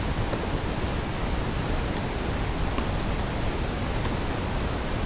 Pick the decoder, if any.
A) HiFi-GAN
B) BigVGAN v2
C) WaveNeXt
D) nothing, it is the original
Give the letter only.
D